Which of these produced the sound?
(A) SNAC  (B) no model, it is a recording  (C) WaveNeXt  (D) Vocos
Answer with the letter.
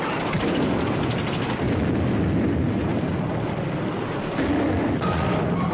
B